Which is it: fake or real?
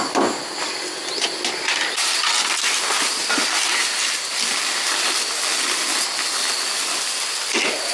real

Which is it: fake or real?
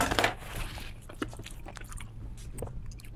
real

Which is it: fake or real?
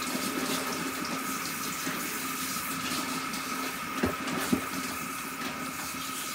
real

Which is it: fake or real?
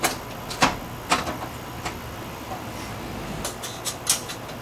real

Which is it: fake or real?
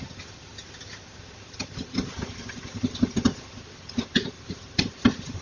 real